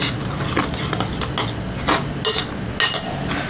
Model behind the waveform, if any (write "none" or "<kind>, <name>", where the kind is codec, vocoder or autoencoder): none